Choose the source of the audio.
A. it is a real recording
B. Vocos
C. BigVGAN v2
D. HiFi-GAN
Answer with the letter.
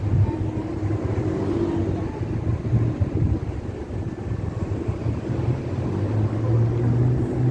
A